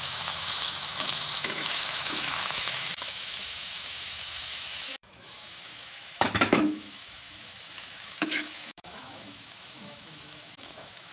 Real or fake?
fake